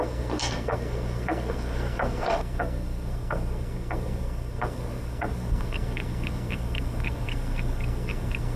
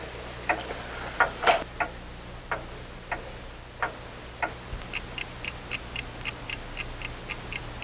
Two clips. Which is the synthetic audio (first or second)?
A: first